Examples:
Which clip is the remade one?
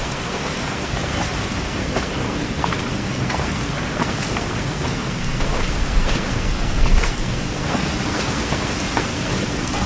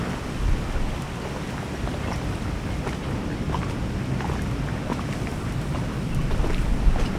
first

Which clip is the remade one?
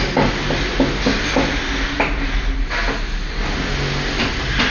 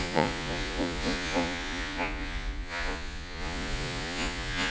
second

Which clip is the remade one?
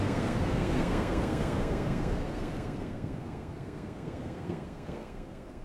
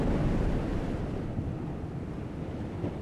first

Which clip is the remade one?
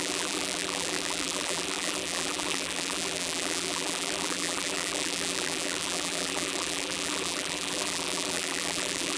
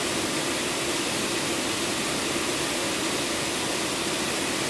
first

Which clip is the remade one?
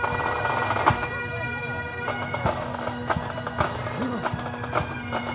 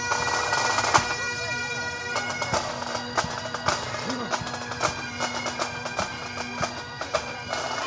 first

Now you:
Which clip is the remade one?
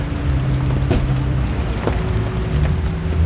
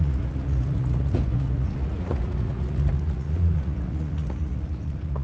second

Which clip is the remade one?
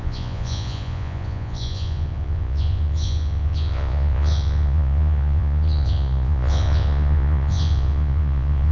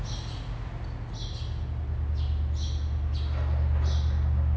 first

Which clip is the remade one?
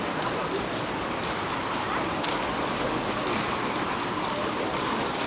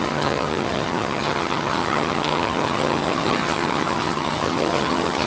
second